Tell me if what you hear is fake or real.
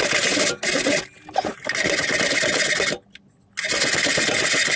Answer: real